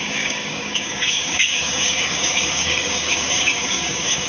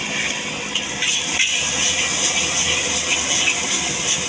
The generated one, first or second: first